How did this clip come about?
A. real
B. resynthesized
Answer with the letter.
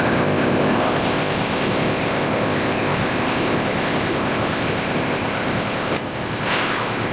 B